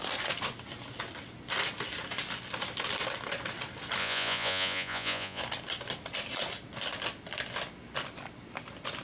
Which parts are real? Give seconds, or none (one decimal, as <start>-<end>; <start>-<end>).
0.0-4.0; 5.4-9.0

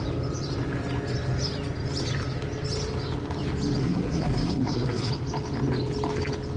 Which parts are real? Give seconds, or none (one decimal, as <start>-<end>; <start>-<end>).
0.0-3.8; 5.1-6.6

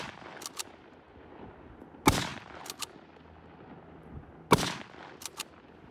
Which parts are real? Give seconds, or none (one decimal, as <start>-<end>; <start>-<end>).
0.0-5.9

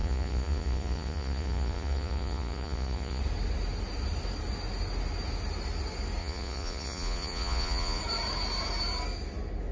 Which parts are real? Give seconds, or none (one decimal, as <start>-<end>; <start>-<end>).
3.2-6.2; 8.0-9.7

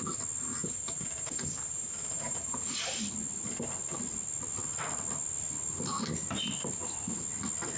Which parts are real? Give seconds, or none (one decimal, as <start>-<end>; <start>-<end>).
0.0-0.6; 3.0-7.8

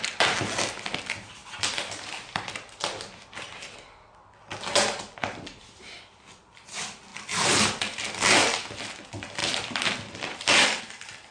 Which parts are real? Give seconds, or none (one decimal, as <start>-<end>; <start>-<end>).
0.0-11.3